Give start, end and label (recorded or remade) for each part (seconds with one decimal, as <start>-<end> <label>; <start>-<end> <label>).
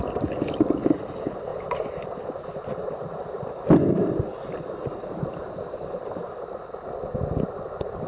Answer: 0.0-8.1 recorded